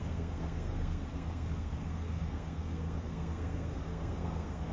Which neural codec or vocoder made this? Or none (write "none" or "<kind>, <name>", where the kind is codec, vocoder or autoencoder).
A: codec, SNAC